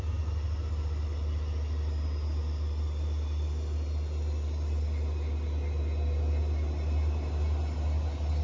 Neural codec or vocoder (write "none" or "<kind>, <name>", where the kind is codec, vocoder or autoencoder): none